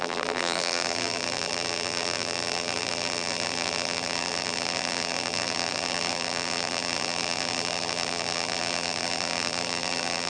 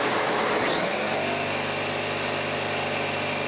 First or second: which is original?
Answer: second